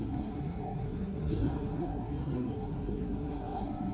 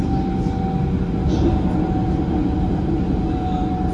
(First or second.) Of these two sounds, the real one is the second